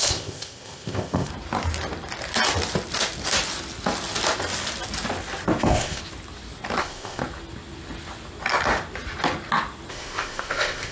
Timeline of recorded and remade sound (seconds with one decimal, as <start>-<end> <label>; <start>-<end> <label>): 0.0-1.3 remade; 1.3-5.6 recorded; 5.6-6.0 remade; 6.0-6.8 recorded; 6.8-7.2 remade; 7.2-9.9 recorded; 9.9-10.9 remade